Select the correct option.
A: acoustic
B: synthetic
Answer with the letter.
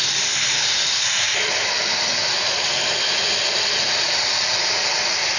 A